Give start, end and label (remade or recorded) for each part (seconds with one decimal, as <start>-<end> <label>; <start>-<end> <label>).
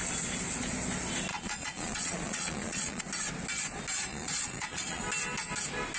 0.0-1.3 recorded; 1.3-3.0 remade; 3.0-4.1 recorded; 4.1-5.0 remade; 5.0-6.0 recorded